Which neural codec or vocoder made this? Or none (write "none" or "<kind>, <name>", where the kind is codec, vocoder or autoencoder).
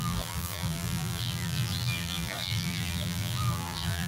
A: vocoder, BigVGAN v2